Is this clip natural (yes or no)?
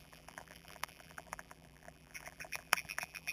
no